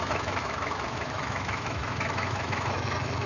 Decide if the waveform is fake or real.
fake